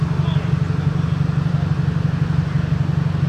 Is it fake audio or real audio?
real